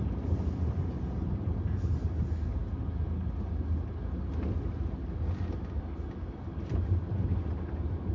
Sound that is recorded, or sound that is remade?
recorded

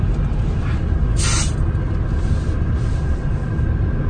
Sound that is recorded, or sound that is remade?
recorded